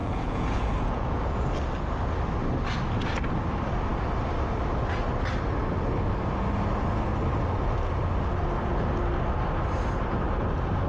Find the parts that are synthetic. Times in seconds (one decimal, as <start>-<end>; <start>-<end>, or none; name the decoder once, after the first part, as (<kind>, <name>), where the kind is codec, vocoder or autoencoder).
0.0-1.5 (vocoder, Vocos)